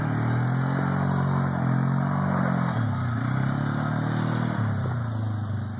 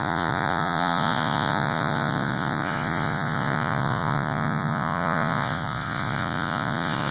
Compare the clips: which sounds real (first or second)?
first